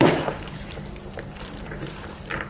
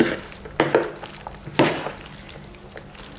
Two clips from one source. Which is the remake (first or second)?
first